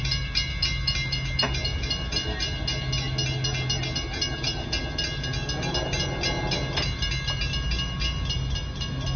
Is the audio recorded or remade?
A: recorded